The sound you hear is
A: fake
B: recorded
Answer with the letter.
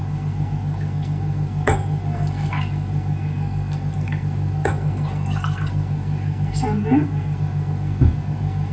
A